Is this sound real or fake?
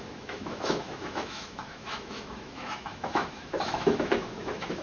fake